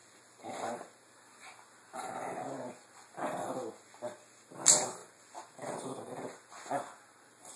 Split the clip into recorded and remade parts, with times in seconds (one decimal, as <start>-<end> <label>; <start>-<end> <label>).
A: 0.0-7.6 recorded

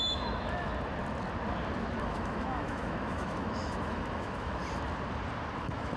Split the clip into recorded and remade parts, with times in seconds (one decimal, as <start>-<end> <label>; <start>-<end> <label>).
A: 0.0-0.7 remade; 0.7-2.0 recorded; 2.0-4.6 remade; 4.6-5.6 recorded; 5.6-6.0 remade